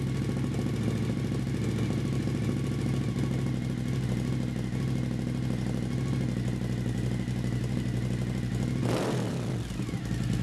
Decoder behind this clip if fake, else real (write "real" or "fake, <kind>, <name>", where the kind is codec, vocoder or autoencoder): real